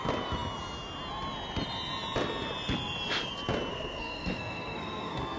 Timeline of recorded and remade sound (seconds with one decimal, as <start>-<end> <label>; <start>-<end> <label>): 0.0-3.7 recorded; 3.7-5.4 remade